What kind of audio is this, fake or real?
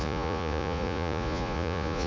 fake